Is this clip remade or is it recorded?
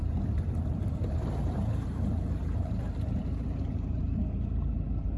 remade